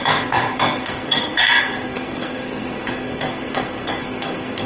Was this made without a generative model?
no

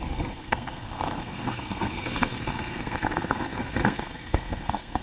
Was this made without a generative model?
no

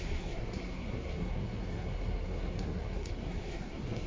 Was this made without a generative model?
no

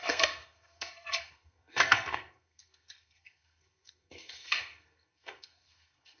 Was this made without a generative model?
no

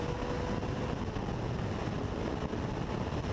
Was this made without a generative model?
yes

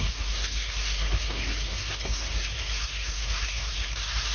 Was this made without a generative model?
no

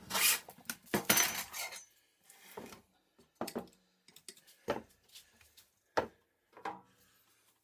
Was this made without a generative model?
yes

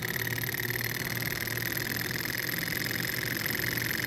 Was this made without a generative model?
yes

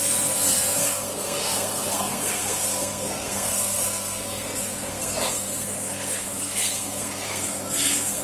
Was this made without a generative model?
no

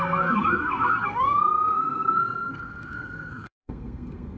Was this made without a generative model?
no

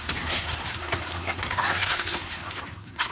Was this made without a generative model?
no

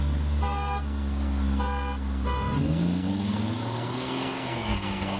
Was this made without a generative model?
no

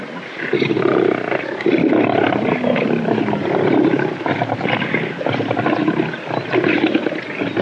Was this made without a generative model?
yes